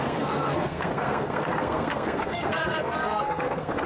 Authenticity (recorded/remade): remade